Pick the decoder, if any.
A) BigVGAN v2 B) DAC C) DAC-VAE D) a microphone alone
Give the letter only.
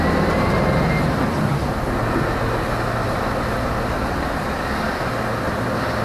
D